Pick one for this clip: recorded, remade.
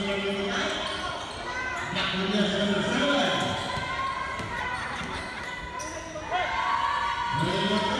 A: recorded